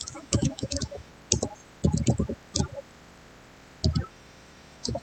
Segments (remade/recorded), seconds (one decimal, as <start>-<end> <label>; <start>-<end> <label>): 0.0-1.1 remade; 1.1-4.1 recorded; 4.1-5.0 remade